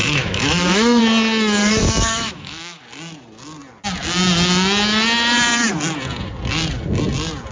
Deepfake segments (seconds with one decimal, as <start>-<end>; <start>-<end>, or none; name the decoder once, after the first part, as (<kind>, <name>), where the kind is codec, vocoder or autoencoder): 0.0-1.0 (autoencoder, DAC-VAE); 1.6-2.8